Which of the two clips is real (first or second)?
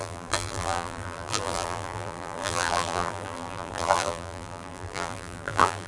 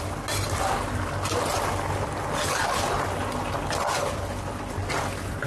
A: second